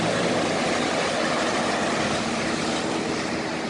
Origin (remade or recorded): recorded